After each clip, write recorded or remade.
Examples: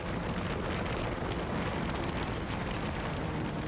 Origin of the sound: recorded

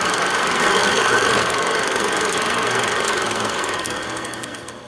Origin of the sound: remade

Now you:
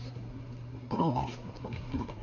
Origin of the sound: remade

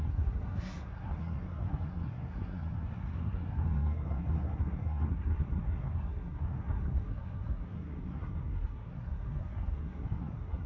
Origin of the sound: remade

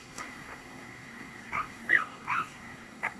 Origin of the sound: remade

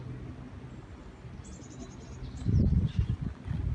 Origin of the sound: recorded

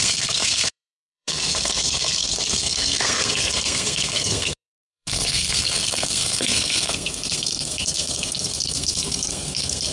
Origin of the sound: remade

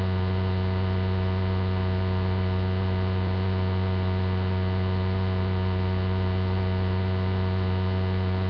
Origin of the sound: recorded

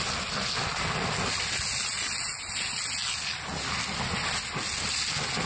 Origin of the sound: recorded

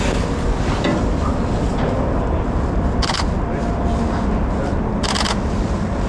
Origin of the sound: recorded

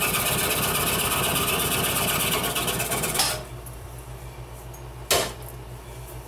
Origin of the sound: recorded